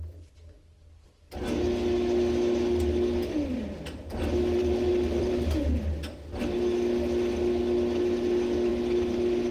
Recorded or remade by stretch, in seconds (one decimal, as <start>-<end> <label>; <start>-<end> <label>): 0.0-4.6 recorded; 4.6-5.8 remade; 5.8-9.5 recorded